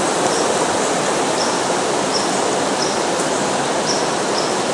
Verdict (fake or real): real